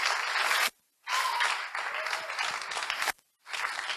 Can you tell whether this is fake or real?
real